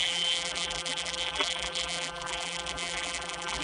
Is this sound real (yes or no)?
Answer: no